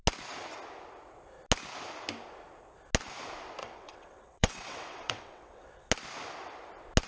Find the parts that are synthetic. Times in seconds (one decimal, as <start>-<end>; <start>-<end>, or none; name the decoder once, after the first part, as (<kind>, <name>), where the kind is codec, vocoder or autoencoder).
3.6-5.9 (vocoder, WaveNeXt)